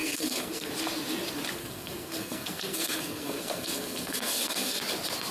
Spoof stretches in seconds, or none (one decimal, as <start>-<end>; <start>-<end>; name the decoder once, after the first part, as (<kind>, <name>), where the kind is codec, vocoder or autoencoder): 0.0-0.7 (codec, SNAC); 1.6-4.8